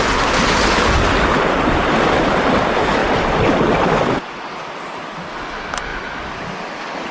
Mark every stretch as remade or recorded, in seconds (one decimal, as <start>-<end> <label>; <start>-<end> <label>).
0.0-3.0 recorded; 3.0-4.1 remade; 4.1-5.9 recorded; 5.9-7.1 remade